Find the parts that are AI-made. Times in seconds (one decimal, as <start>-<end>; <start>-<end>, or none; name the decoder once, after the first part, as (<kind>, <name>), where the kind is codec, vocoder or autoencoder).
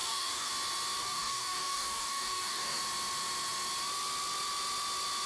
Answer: 0.0-0.5 (codec, DAC); 1.0-2.8